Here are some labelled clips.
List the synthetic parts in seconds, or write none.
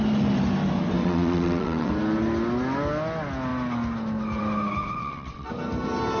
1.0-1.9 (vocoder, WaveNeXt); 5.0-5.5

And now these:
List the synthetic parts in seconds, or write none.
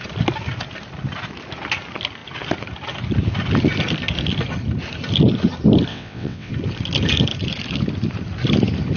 5.9-6.5 (vocoder, WaveNeXt)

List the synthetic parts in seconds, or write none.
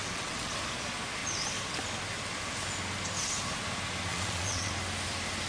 0.0-0.5 (vocoder, WaveNeXt); 4.1-4.7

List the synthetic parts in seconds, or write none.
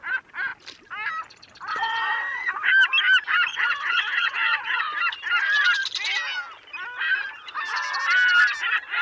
1.7-2.7 (vocoder, WaveNeXt); 3.5-4.8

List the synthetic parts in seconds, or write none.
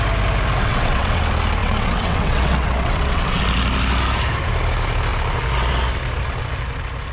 0.6-1.2 (vocoder, WaveNeXt); 1.6-3.4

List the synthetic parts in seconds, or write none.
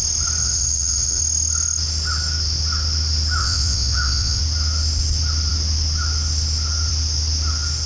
0.4-1.2 (vocoder, WaveNeXt); 3.4-4.4